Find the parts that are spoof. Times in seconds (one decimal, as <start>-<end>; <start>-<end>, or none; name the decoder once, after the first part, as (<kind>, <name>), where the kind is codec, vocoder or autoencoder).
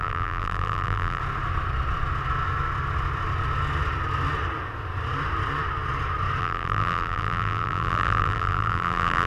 0.0-1.2 (vocoder, BigVGAN v2); 6.4-9.3